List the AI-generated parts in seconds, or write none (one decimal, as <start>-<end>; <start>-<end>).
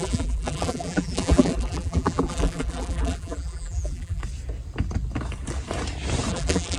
0.0-4.2; 6.3-6.8